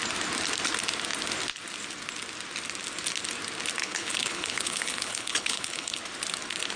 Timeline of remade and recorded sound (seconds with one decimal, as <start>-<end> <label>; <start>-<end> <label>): 0.0-3.8 recorded; 3.8-6.0 remade; 6.0-6.8 recorded